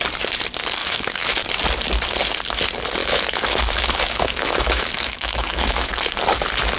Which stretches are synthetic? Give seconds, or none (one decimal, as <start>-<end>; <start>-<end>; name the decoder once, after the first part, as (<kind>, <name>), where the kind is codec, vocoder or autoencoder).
0.8-1.4 (autoencoder, DAC-VAE); 3.0-5.9